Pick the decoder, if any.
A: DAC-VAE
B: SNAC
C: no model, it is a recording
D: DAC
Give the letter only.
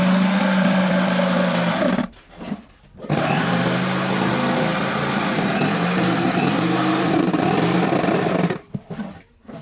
C